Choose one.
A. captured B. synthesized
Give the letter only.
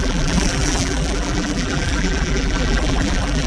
B